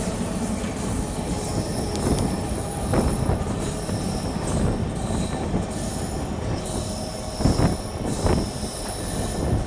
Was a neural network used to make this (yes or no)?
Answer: no